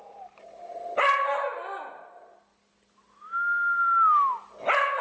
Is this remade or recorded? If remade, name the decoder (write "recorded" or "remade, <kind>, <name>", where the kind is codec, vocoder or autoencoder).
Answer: recorded